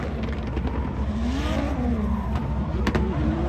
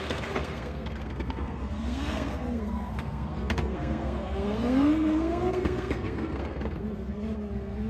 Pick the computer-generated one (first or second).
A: second